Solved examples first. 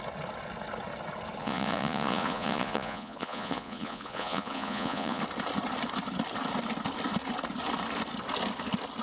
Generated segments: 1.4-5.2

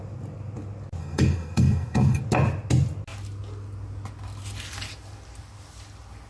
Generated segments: 1.0-2.2

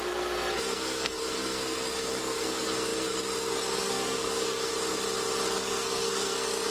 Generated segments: 0.0-4.7; 5.6-6.7